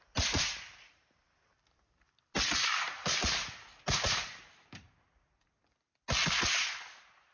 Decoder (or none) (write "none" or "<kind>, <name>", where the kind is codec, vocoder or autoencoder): none